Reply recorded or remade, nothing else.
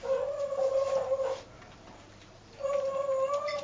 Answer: recorded